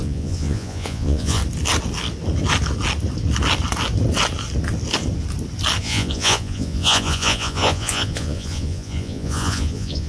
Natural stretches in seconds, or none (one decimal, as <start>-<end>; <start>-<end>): 1.4-5.8